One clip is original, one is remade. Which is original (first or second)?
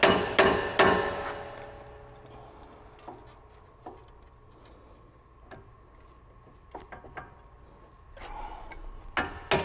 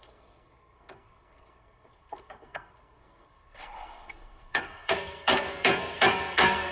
first